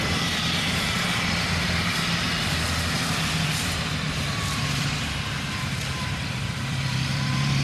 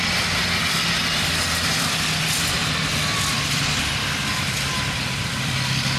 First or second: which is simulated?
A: first